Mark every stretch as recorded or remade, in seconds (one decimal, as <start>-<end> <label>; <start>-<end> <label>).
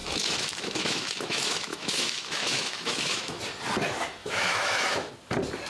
0.0-3.4 remade; 3.4-4.2 recorded; 4.2-5.1 remade; 5.1-5.7 recorded